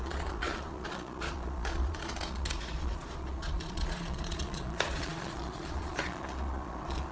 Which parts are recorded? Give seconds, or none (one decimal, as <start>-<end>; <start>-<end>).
none